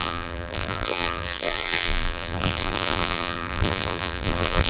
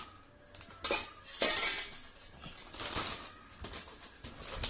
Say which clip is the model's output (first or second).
first